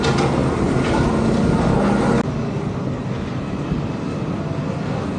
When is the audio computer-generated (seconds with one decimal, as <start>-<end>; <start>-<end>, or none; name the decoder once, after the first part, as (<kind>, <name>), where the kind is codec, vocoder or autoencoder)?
none